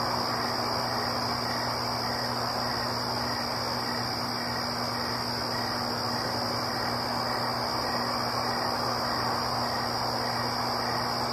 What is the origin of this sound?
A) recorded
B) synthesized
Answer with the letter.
A